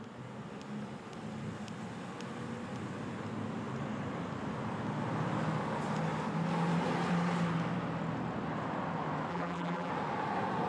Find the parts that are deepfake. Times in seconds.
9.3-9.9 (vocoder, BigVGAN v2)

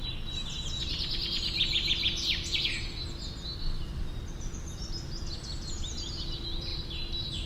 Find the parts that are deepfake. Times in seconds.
6.7-7.5 (vocoder, BigVGAN v2)

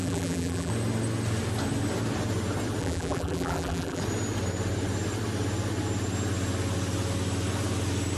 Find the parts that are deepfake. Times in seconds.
0.0-0.7 (vocoder, BigVGAN v2); 2.8-4.0

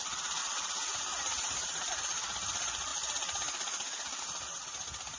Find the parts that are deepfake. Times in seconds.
0.4-1.9 (vocoder, BigVGAN v2)

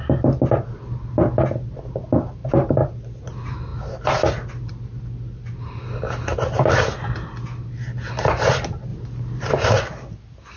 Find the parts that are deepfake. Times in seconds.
2.4-3.2 (vocoder, BigVGAN v2); 8.9-9.7

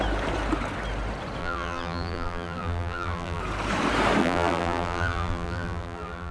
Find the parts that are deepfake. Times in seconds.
1.4-3.4 (vocoder, BigVGAN v2); 4.2-6.3